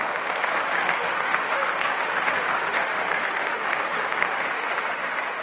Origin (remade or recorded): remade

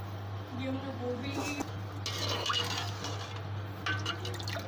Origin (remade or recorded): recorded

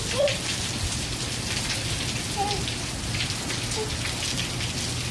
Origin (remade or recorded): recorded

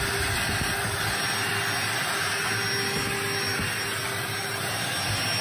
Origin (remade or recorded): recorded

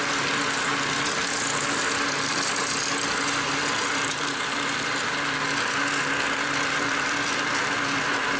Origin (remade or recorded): recorded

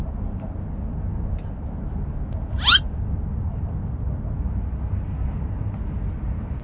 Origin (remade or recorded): recorded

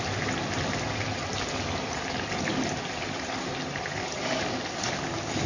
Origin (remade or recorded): recorded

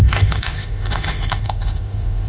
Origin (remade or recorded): remade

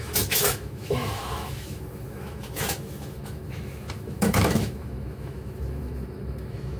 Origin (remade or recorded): remade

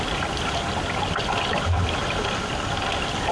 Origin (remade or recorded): recorded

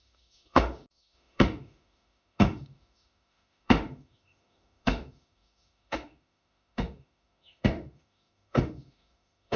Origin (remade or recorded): remade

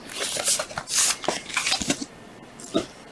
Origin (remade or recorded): recorded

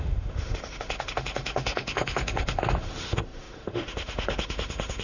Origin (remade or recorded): remade